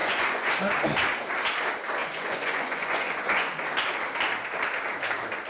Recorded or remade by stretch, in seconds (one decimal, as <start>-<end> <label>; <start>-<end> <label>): 0.0-0.5 remade; 0.5-2.0 recorded; 2.0-3.6 remade; 3.6-5.5 recorded